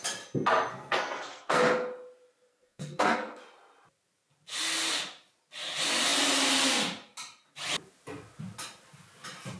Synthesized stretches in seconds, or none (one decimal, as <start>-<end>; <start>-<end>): 0.7-1.6; 2.5-3.4